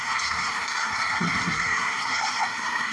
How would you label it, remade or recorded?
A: remade